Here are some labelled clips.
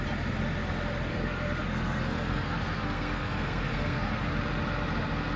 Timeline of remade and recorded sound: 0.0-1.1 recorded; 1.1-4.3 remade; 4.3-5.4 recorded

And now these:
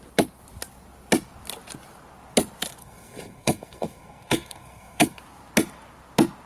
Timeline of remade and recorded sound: 0.0-2.8 recorded; 2.8-5.2 remade; 5.2-6.5 recorded